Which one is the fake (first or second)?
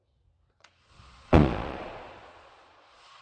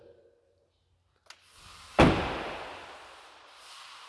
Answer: first